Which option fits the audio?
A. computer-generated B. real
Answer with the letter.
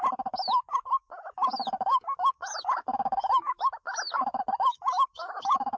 A